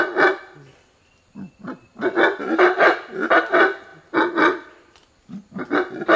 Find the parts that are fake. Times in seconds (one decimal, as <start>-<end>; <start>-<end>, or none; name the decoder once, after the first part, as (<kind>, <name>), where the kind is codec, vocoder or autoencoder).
none

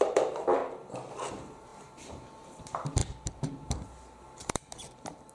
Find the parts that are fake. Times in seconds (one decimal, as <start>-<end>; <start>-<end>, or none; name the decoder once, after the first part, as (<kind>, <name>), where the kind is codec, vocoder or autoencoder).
0.0-0.6 (vocoder, BigVGAN v2); 1.1-5.3

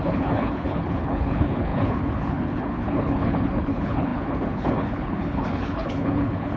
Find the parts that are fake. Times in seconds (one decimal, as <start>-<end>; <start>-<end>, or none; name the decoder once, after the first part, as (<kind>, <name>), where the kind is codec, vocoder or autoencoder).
0.0-6.6 (codec, HILCodec)

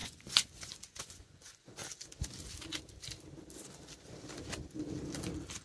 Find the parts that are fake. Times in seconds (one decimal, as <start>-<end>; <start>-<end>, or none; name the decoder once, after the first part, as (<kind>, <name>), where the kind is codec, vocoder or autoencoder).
0.0-1.8 (vocoder, Vocos)

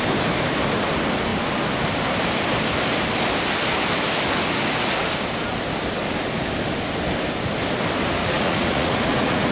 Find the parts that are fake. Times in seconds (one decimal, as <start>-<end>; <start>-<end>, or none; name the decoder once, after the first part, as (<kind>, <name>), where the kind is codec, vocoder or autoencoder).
8.2-9.5 (vocoder, Vocos)

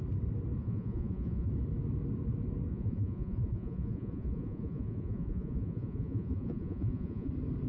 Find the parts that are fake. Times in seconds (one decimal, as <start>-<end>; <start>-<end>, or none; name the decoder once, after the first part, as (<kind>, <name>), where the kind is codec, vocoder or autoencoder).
0.6-1.5 (vocoder, Vocos); 2.7-7.3

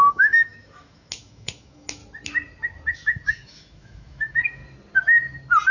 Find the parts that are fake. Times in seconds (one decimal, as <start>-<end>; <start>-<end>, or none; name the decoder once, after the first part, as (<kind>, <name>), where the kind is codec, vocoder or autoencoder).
0.0-2.0 (autoencoder, DAC-VAE); 3.3-4.6

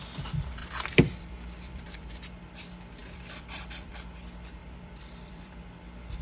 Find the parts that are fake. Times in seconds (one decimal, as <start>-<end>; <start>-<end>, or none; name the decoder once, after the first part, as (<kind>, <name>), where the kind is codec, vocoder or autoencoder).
0.6-2.1 (vocoder, BigVGAN v2); 3.0-3.9; 4.6-5.5